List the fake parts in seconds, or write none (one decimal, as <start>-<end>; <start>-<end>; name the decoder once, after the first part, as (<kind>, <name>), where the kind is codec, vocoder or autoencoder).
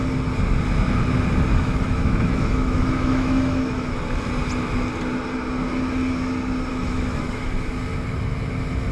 1.5-4.0 (autoencoder, DAC-VAE); 6.7-7.7